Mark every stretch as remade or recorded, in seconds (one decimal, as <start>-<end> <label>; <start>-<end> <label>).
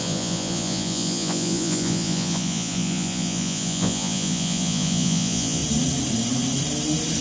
0.0-5.6 remade; 5.6-7.2 recorded